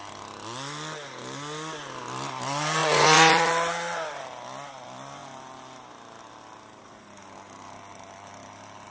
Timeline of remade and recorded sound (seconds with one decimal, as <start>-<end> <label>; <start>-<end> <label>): 0.0-2.8 recorded; 2.8-3.5 remade; 3.5-8.9 recorded